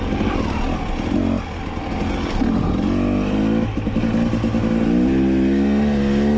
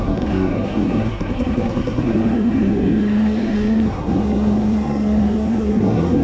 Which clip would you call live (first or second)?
first